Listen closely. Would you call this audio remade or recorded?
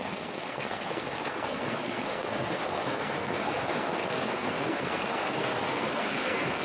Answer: remade